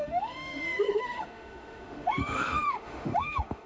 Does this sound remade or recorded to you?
remade